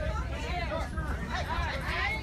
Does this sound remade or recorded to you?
remade